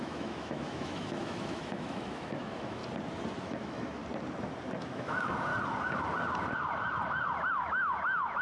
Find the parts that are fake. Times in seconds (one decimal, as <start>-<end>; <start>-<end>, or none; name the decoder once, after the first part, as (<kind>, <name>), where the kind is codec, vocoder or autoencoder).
0.0-2.8 (autoencoder, DAC-VAE); 3.4-4.0; 4.8-5.5; 7.5-8.4